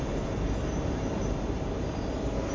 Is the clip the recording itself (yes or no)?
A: no